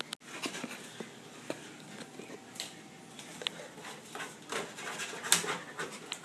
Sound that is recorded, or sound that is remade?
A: recorded